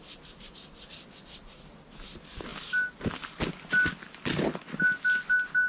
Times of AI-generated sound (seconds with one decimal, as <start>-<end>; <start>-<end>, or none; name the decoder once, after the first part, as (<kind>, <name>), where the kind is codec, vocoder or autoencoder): none